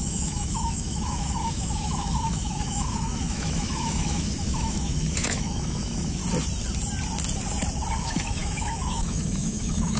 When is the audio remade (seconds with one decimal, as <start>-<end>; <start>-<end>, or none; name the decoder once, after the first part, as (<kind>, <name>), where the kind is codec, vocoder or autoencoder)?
0.0-6.2 (autoencoder, DAC-VAE); 8.0-10.0